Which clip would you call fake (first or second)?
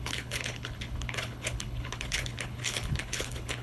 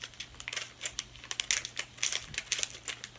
first